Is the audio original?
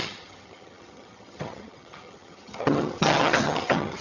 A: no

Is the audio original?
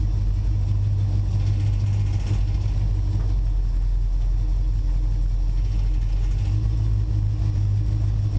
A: yes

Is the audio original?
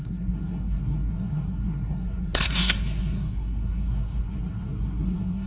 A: no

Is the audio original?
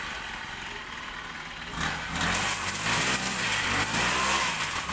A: no